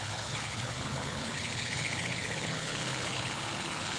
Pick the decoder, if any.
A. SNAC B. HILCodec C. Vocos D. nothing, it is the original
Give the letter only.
B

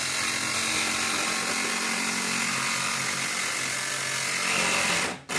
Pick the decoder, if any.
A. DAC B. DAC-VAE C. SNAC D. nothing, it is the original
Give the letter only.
D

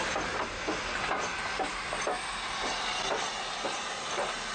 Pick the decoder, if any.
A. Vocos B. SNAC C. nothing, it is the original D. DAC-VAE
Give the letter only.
C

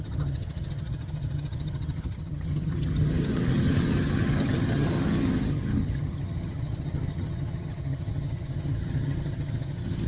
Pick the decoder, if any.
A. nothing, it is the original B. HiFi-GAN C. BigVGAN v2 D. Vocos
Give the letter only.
B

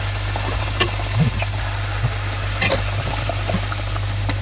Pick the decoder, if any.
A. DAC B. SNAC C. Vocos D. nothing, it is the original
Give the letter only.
D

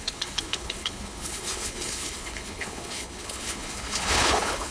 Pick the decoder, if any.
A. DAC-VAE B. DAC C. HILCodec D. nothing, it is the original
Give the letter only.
C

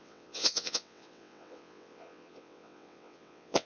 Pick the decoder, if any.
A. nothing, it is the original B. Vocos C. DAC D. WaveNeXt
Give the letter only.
D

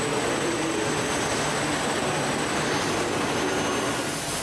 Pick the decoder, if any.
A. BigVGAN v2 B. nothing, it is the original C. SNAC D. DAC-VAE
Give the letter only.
B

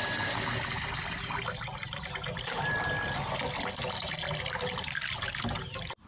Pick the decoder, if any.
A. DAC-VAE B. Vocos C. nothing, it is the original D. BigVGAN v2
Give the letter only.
C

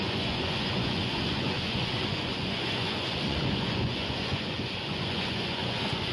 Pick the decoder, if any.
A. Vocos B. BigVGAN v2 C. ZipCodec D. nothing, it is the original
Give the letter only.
A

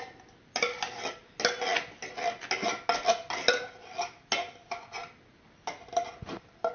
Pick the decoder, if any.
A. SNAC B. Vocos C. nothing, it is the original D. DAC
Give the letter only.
C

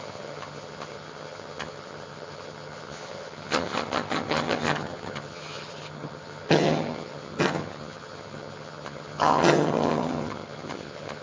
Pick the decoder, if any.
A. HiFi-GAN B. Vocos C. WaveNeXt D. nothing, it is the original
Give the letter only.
A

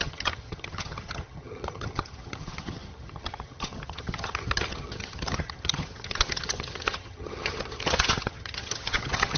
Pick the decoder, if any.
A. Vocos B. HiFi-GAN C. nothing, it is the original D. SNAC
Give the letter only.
B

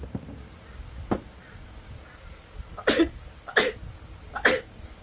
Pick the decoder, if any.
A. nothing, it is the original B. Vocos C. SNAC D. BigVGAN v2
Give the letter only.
A